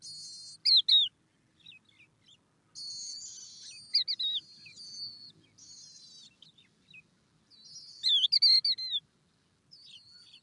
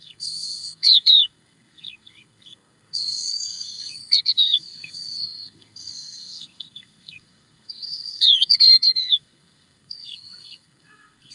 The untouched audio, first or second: first